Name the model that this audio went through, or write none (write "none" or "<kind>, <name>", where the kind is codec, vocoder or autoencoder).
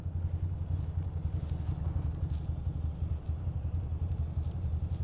none